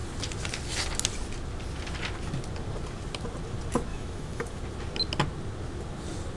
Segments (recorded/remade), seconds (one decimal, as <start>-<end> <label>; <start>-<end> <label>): 0.0-3.9 recorded; 3.9-4.6 remade; 4.6-6.4 recorded